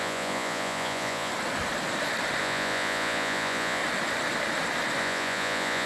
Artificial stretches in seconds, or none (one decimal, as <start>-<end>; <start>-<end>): 0.0-1.3; 2.4-3.8; 5.0-5.9